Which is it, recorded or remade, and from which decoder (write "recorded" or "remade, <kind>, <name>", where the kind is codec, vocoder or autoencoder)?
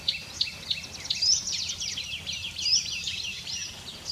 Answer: recorded